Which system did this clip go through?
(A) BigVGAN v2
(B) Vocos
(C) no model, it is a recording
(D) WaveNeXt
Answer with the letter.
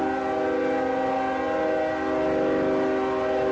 C